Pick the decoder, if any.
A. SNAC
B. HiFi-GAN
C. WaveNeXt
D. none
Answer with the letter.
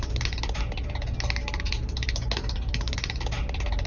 D